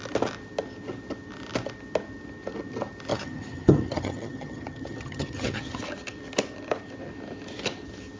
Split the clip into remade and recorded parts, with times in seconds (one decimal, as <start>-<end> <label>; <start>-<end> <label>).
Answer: 0.0-3.1 recorded; 3.1-5.8 remade; 5.8-8.2 recorded